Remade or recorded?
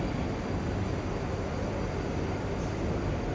recorded